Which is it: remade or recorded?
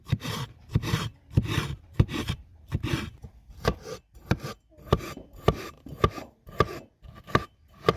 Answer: remade